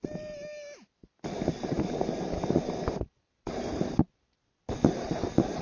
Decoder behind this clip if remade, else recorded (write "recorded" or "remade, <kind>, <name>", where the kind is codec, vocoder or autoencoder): recorded